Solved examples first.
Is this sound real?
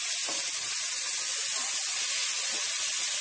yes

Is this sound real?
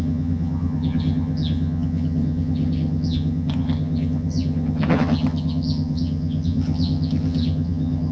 no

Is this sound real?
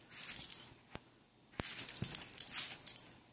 yes